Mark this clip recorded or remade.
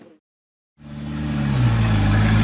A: recorded